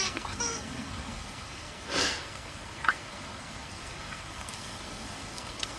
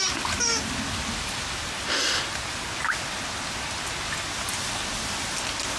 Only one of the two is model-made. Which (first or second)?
first